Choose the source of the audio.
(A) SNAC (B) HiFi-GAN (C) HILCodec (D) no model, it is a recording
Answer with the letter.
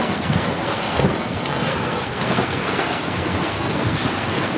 A